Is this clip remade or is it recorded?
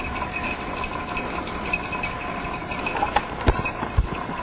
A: remade